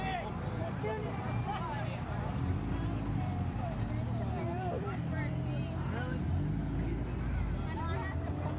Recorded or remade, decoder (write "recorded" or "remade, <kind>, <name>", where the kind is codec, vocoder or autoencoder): recorded